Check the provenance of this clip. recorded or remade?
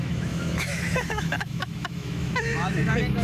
remade